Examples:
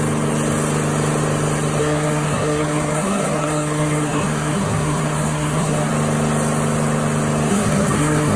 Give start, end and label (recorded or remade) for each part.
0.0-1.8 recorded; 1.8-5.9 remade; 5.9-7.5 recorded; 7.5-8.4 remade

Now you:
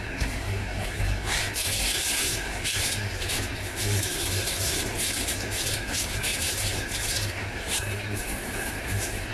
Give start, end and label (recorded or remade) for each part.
0.0-9.3 remade